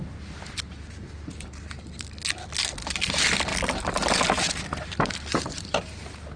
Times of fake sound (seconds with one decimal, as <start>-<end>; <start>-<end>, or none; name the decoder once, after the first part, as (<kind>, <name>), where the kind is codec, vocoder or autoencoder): none